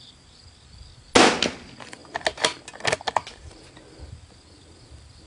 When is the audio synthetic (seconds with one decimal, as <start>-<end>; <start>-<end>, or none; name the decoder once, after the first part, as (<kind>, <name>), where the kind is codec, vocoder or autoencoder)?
none